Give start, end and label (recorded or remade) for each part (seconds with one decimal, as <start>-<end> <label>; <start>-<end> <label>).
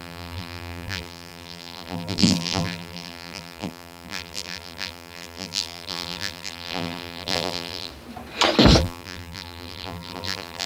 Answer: 0.0-7.9 remade; 7.9-8.8 recorded; 8.8-10.7 remade